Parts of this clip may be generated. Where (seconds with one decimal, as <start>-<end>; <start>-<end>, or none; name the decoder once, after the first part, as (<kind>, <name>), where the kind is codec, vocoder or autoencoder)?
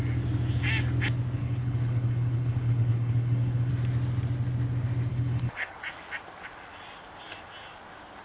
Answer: 1.4-3.7 (codec, HILCodec); 5.1-5.8